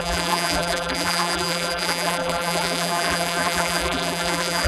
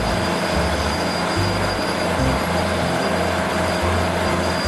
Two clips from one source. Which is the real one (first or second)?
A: second